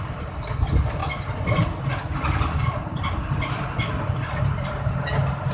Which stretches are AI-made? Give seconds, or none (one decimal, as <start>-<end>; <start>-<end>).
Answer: none